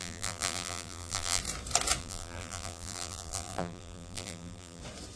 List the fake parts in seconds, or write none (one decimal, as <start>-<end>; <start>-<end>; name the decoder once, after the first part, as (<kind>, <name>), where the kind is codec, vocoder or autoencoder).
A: 0.0-1.4 (vocoder, BigVGAN v2); 2.0-4.8